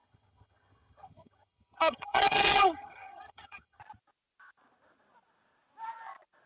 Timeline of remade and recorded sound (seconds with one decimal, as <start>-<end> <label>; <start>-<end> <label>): 0.0-3.8 remade; 3.8-6.5 recorded